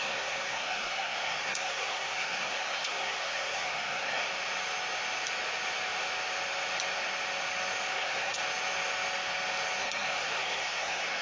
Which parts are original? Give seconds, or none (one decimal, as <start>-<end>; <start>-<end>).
4.3-7.9; 8.4-9.8